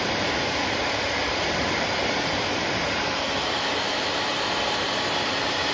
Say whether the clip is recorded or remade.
remade